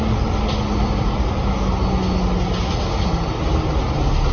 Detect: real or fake real